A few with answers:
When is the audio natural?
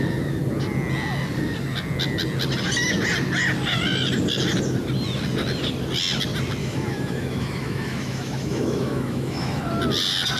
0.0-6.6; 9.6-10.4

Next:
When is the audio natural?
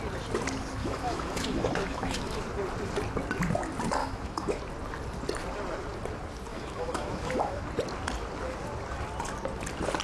0.0-0.8; 2.4-4.0; 4.6-6.5; 7.6-10.0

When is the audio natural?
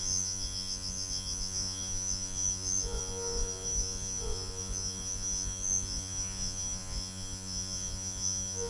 none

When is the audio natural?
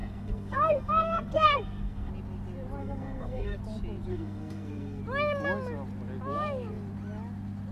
2.1-2.8; 3.6-4.1; 5.0-7.7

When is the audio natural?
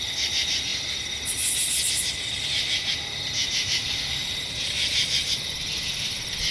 0.0-3.4; 4.5-5.2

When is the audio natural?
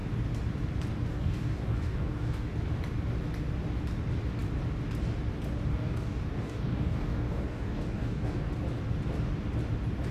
0.0-1.1; 2.5-5.7; 8.5-10.1